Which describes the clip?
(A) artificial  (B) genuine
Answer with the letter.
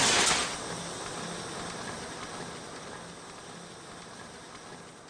B